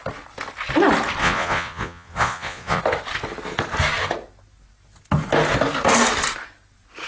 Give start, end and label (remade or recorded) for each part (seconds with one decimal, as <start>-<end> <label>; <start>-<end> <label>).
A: 0.0-1.2 recorded; 1.2-2.8 remade; 2.8-7.1 recorded